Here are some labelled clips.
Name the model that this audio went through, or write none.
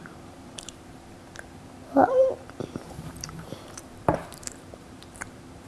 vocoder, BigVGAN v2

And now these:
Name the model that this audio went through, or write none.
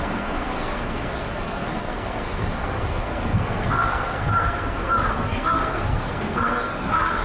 codec, SNAC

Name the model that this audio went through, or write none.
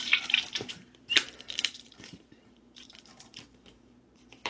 vocoder, BigVGAN v2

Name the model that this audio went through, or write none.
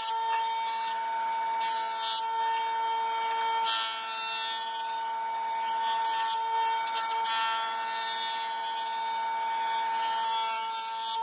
none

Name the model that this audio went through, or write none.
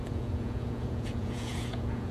vocoder, Vocos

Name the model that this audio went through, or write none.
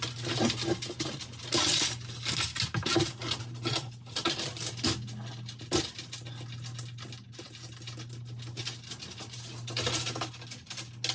none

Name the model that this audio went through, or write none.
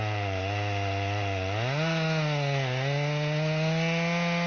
none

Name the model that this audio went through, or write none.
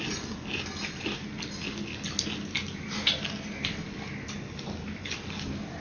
none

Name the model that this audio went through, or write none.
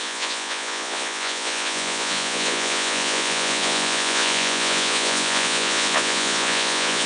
vocoder, Vocos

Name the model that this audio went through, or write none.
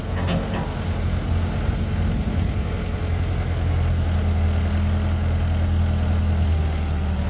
none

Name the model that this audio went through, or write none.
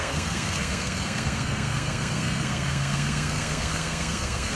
codec, SNAC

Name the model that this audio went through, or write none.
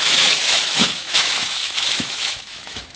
autoencoder, DAC-VAE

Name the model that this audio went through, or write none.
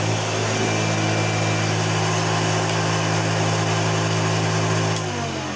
none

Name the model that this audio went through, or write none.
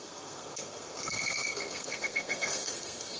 codec, SNAC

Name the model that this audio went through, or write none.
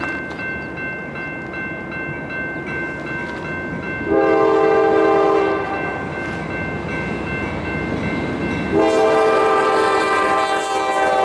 none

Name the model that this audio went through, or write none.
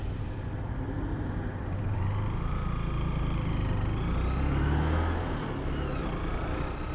none